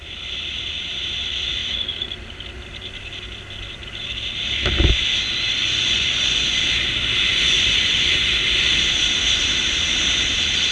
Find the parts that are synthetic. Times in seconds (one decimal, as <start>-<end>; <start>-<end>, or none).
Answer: 5.6-6.6; 7.3-8.3